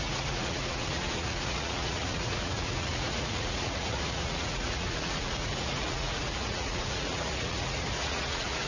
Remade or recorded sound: remade